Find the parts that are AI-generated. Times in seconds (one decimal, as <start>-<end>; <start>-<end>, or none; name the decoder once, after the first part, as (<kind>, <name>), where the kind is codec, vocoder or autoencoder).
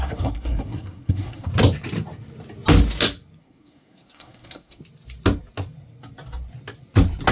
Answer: 0.0-1.5 (codec, SNAC); 3.4-4.8